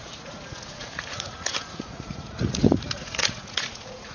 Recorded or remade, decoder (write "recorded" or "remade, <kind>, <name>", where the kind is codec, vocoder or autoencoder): remade, vocoder, Vocos